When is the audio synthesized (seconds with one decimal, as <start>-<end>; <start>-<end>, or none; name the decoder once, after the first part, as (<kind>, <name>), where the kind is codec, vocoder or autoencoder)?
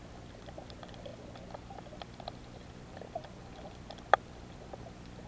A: 0.0-1.1 (vocoder, BigVGAN v2); 2.9-5.3